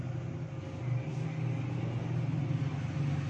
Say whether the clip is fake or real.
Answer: real